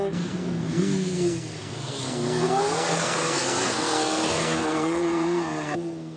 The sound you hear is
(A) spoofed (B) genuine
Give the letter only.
A